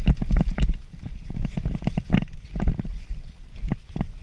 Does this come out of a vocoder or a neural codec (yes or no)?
no